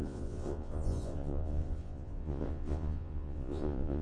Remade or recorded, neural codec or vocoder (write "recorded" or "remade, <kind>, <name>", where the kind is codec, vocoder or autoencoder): remade, vocoder, Vocos